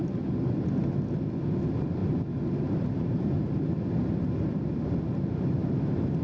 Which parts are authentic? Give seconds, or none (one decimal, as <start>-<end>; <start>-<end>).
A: 0.0-6.2